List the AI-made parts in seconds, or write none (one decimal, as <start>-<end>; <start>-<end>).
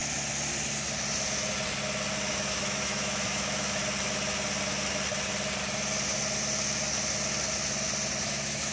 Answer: 2.3-3.8; 8.2-8.7